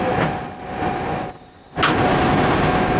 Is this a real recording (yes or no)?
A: yes